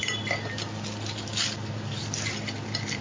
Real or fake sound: real